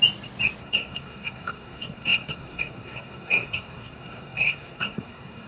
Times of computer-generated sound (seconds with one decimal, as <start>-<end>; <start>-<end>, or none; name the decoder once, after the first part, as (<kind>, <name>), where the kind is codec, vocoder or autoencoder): 0.6-5.5 (codec, SNAC)